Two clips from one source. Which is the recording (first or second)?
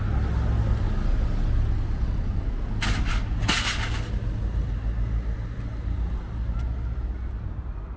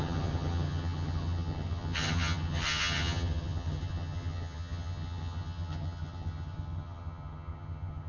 first